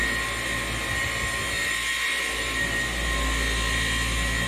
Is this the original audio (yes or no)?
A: yes